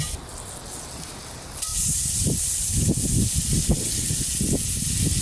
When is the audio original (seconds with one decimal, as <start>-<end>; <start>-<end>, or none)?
0.0-5.2